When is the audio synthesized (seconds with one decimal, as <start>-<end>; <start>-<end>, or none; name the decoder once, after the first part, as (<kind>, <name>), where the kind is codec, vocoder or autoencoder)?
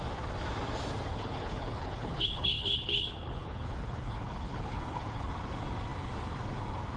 1.1-5.3 (codec, HILCodec)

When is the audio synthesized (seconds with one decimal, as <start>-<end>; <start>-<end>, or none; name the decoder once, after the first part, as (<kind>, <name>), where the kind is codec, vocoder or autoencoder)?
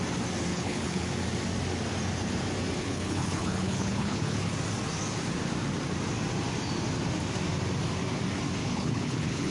0.5-1.1 (codec, HILCodec); 2.8-4.5; 8.6-9.5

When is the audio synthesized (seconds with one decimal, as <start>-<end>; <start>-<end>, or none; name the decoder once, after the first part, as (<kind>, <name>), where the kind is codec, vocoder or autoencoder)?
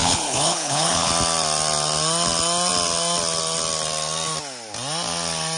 0.0-1.1 (codec, HILCodec)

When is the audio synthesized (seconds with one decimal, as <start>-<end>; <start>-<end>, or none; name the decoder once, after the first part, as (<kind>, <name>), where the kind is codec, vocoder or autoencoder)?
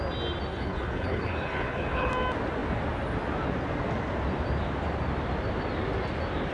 0.5-2.1 (codec, HILCodec)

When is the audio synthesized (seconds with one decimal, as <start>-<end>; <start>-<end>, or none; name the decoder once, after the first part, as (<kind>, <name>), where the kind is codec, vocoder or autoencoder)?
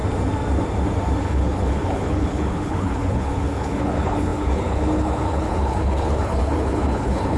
1.2-7.4 (codec, HILCodec)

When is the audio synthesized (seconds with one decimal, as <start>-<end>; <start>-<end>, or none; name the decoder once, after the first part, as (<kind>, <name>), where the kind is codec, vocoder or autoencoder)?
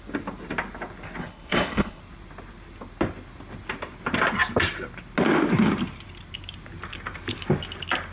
1.2-2.0 (codec, HILCodec)